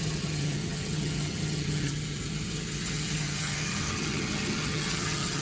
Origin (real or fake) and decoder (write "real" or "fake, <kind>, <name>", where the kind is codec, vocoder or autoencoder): fake, vocoder, HiFi-GAN